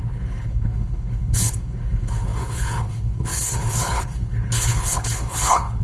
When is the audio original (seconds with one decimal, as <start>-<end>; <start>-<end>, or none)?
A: none